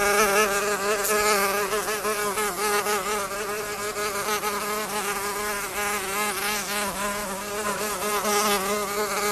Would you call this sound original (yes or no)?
yes